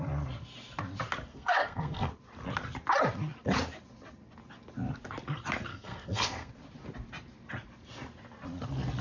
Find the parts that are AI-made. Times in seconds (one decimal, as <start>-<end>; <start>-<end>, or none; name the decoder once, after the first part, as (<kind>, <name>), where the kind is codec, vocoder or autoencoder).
1.3-2.1 (codec, SNAC); 5.7-6.5